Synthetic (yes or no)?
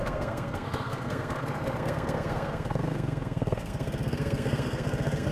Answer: yes